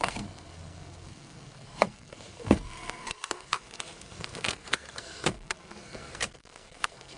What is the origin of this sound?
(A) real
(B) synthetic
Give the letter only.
B